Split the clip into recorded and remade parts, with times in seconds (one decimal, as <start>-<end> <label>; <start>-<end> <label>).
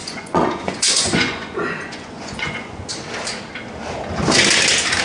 0.0-2.9 remade; 2.9-5.0 recorded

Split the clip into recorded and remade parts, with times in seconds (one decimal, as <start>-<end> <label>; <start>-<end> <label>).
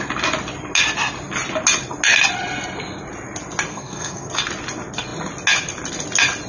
0.0-3.7 recorded; 3.7-4.3 remade; 4.3-6.5 recorded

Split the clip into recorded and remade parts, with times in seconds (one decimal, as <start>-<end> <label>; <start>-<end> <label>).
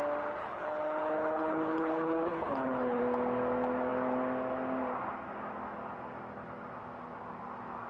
0.0-0.4 recorded; 0.4-3.0 remade; 3.0-7.9 recorded